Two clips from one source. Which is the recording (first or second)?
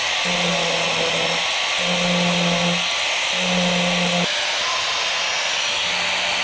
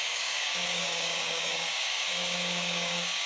first